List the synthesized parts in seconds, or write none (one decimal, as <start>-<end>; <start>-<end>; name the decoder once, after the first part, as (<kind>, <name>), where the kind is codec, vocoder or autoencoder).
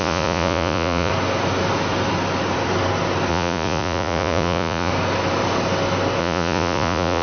0.0-1.1 (vocoder, Vocos); 3.3-4.9; 6.2-7.2